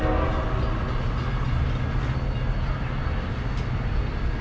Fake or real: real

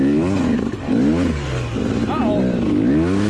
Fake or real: real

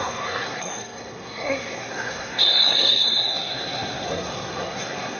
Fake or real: fake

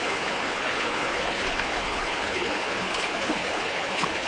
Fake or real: fake